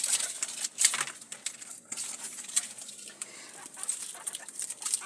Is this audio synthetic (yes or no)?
yes